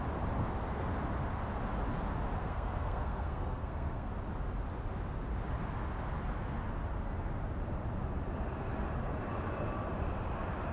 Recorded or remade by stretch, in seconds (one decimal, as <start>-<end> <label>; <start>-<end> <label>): 0.0-2.4 recorded; 2.4-4.1 remade; 4.1-10.7 recorded